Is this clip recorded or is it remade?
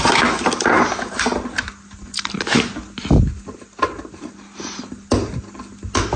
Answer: recorded